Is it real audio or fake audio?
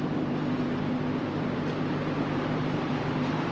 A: fake